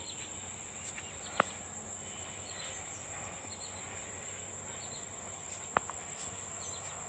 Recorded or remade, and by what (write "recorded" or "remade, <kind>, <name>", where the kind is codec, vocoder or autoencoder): recorded